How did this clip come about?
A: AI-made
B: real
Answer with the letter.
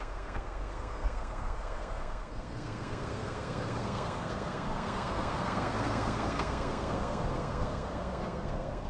A